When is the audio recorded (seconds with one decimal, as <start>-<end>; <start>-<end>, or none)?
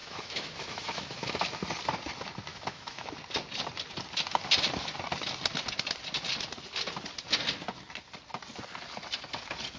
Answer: 1.4-2.5; 3.1-9.8